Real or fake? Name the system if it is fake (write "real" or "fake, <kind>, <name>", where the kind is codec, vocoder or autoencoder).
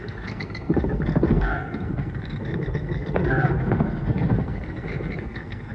fake, codec, SNAC